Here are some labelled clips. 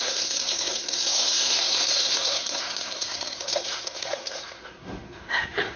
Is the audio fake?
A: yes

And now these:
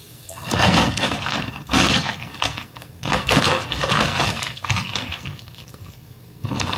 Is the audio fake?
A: yes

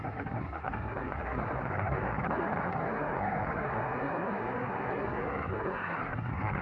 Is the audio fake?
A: yes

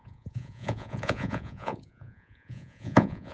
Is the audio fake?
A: yes